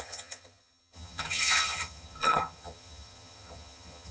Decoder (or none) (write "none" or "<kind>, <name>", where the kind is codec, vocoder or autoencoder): vocoder, HiFi-GAN